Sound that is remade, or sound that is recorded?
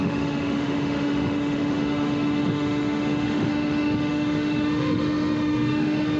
remade